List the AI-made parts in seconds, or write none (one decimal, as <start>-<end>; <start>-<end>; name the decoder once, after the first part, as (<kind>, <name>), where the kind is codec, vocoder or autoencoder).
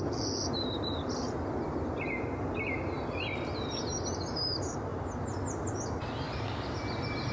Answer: none